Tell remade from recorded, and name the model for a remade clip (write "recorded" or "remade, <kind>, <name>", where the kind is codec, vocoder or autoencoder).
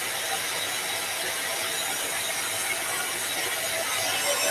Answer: recorded